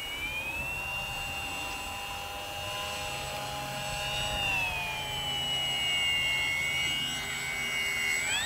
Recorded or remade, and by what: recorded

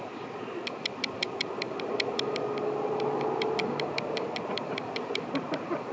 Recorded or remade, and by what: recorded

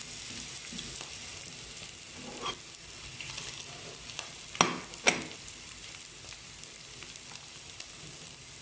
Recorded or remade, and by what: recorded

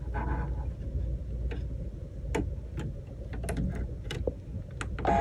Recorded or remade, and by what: recorded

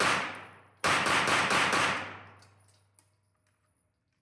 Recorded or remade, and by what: recorded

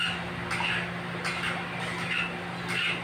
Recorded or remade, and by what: recorded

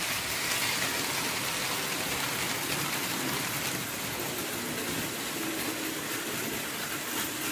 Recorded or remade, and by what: recorded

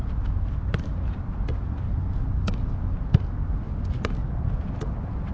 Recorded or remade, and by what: recorded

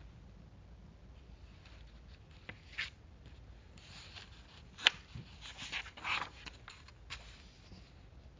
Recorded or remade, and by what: recorded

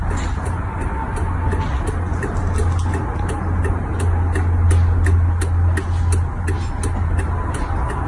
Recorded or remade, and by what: recorded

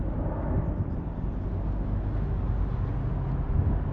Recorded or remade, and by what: recorded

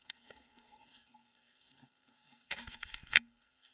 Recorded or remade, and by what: remade, codec, SNAC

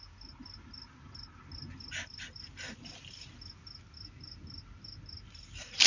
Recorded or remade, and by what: recorded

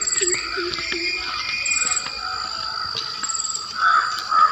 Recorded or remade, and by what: recorded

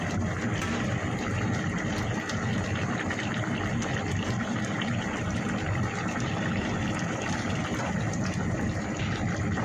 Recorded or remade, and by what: remade, vocoder, BigVGAN v2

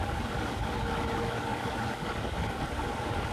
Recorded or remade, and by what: remade, codec, DAC